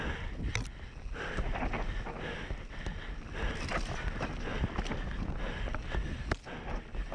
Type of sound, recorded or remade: recorded